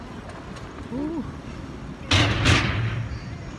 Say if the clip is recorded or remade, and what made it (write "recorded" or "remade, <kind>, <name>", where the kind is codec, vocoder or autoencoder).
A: recorded